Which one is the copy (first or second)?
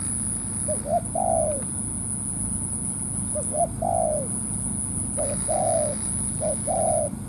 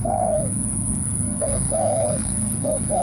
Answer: second